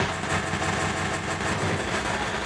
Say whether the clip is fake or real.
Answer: real